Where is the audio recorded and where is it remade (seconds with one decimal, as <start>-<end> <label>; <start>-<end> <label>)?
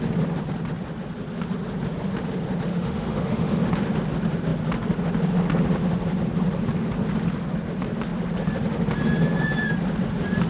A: 0.0-2.7 recorded; 2.7-3.6 remade; 3.6-10.5 recorded